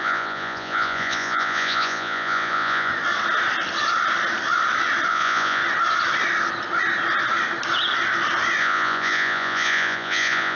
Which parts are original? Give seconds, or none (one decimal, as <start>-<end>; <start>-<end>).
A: 2.9-5.1; 5.6-8.6